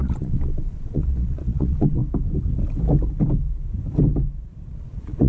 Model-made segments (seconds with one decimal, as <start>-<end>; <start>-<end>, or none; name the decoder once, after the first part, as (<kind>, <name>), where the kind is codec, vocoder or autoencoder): 0.0-2.0 (vocoder, Vocos); 4.7-5.3